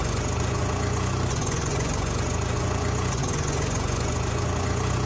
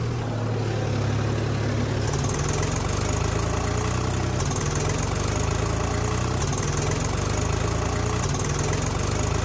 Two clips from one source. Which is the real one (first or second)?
second